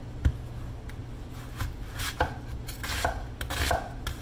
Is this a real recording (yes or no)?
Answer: yes